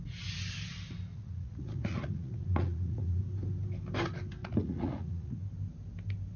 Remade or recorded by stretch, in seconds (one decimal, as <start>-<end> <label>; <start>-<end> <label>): 0.0-1.1 recorded; 1.1-3.2 remade; 3.2-4.4 recorded; 4.4-5.4 remade; 5.4-6.4 recorded